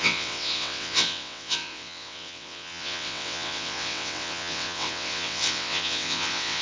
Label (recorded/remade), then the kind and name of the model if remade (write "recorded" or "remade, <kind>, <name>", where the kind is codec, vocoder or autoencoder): remade, vocoder, WaveNeXt